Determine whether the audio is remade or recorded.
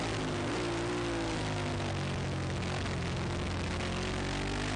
recorded